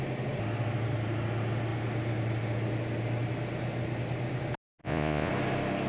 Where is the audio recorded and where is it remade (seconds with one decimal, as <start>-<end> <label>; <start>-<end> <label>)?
0.0-4.8 recorded; 4.8-5.3 remade; 5.3-5.9 recorded